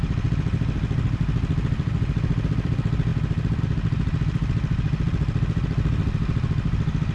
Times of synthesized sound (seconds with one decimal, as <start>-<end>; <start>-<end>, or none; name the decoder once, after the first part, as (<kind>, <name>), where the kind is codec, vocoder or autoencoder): none